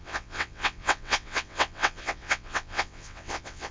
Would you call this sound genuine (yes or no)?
no